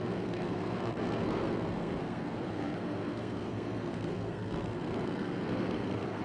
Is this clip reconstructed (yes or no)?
yes